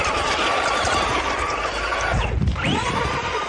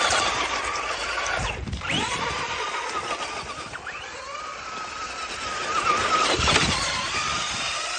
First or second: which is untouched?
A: first